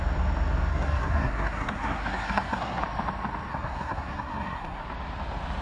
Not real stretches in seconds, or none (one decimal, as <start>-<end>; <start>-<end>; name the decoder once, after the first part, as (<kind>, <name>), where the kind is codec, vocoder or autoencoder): 0.7-2.8 (codec, SNAC); 3.5-4.8